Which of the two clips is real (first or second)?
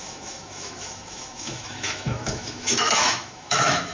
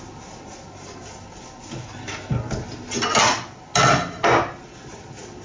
second